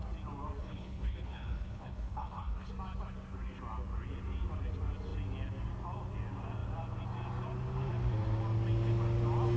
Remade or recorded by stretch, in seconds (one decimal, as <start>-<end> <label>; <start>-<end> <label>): 0.0-0.6 recorded; 0.6-2.7 remade; 2.7-9.6 recorded

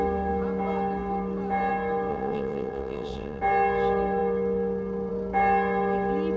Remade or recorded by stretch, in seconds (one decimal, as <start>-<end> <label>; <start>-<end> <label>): 0.0-2.1 recorded; 2.1-3.4 remade; 3.4-6.4 recorded

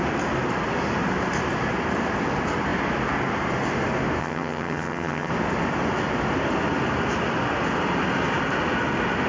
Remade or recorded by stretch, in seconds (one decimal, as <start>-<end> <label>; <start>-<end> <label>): 0.0-4.2 recorded; 4.2-5.3 remade; 5.3-9.3 recorded

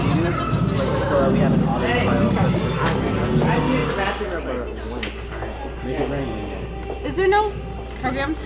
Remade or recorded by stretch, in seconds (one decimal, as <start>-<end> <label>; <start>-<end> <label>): 0.0-8.5 recorded

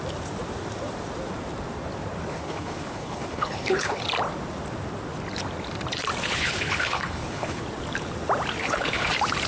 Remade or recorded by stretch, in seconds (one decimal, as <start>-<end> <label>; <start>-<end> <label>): 0.0-2.3 recorded; 2.3-4.0 remade; 4.0-6.2 recorded; 6.2-7.6 remade; 7.6-8.6 recorded; 8.6-9.1 remade; 9.1-9.5 recorded

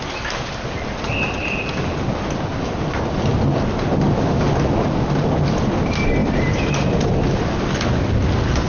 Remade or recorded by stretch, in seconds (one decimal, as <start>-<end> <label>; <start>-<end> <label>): 0.0-8.7 recorded

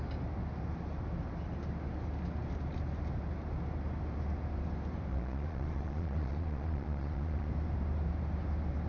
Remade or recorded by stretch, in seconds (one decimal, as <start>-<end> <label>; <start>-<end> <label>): 0.0-5.1 recorded; 5.1-7.5 remade; 7.5-8.9 recorded